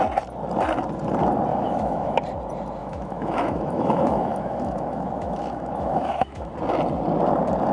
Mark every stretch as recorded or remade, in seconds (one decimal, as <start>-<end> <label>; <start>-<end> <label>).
0.0-1.5 recorded; 1.5-2.2 remade; 2.2-2.8 recorded; 2.8-6.5 remade; 6.5-7.7 recorded